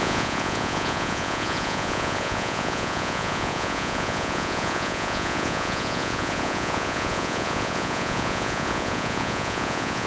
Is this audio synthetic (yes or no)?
yes